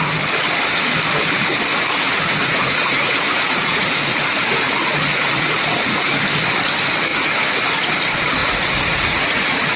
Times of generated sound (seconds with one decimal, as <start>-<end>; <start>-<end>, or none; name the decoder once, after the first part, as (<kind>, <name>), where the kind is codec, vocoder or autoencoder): 1.7-6.2 (vocoder, Vocos); 7.1-7.9; 8.4-9.8